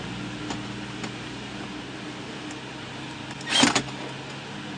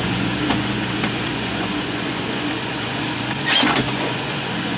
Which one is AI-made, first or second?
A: second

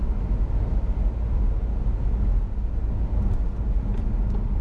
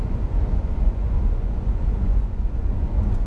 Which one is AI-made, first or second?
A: second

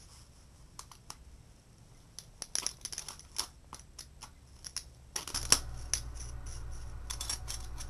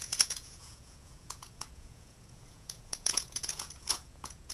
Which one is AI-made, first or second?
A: second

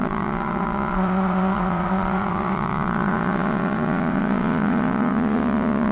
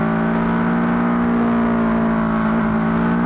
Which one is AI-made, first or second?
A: first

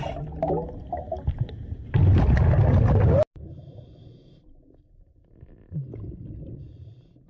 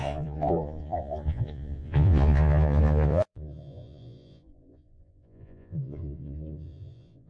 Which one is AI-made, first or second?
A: second